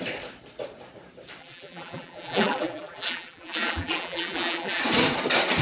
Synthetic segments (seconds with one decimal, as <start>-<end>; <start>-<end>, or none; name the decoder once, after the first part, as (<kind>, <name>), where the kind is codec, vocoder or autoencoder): 1.4-4.8 (vocoder, BigVGAN v2)